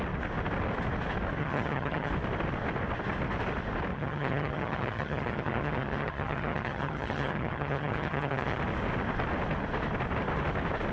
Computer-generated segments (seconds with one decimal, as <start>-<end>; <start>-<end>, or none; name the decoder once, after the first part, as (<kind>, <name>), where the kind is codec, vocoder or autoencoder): 1.4-2.1 (vocoder, HiFi-GAN); 3.9-8.6

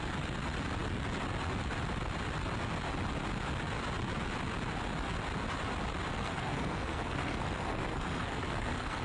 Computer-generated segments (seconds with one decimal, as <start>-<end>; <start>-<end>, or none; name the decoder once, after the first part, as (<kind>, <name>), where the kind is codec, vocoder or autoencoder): 6.1-9.0 (codec, SNAC)

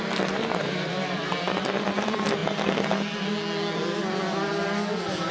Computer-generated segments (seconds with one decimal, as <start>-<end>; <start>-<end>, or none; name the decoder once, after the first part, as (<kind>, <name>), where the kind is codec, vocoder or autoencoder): 0.0-2.4 (vocoder, BigVGAN v2); 4.0-4.5

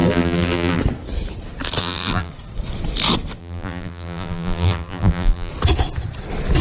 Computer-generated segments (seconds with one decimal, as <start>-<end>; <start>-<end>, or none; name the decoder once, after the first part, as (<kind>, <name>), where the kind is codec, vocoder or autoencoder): 0.0-0.8 (vocoder, BigVGAN v2); 1.8-2.3; 3.4-5.5

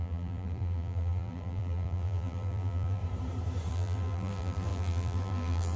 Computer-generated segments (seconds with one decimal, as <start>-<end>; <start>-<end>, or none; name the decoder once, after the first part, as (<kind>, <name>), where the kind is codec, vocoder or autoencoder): 0.0-3.0 (vocoder, BigVGAN v2); 3.7-5.8